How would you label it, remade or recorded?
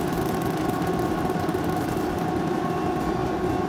recorded